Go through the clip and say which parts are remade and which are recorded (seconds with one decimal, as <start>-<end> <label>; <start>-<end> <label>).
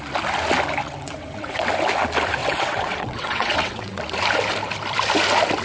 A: 0.0-0.8 recorded; 0.8-1.7 remade; 1.7-2.4 recorded; 2.4-4.0 remade; 4.0-5.6 recorded